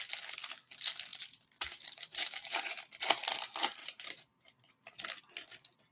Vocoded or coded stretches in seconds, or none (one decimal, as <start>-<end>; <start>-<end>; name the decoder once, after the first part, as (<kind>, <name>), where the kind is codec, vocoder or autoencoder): 1.1-2.8 (vocoder, BigVGAN v2); 3.8-4.7